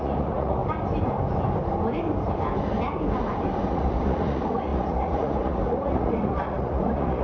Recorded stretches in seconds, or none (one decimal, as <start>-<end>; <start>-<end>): 0.6-3.7